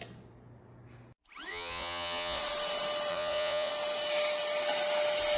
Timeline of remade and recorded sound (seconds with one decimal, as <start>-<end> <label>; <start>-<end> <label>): 0.0-1.5 recorded; 1.5-2.4 remade; 2.4-3.1 recorded; 3.1-3.7 remade; 3.7-5.4 recorded